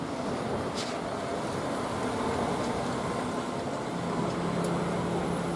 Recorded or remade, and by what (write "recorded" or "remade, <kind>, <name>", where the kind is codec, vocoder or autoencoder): recorded